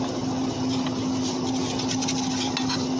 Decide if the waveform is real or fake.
real